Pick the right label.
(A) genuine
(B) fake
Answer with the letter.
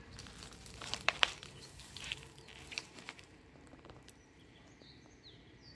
B